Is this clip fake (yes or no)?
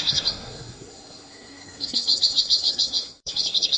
yes